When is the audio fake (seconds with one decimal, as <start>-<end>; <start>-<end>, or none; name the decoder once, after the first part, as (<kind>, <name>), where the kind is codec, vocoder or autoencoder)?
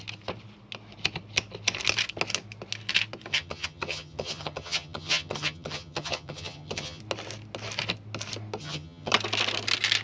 3.3-7.0 (vocoder, HiFi-GAN); 8.6-9.1